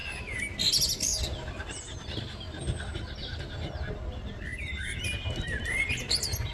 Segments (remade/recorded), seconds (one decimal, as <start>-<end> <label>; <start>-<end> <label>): 0.0-6.5 recorded